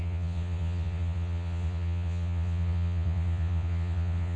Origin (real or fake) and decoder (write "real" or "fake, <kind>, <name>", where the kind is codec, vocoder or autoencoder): fake, vocoder, Vocos